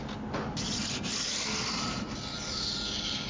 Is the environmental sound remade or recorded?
recorded